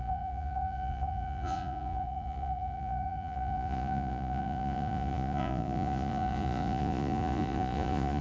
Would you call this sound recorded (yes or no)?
no